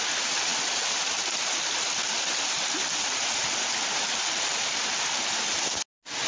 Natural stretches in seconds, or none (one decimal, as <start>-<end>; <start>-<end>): 0.0-6.3